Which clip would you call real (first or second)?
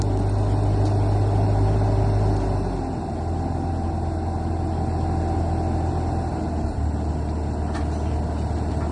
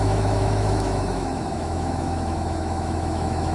first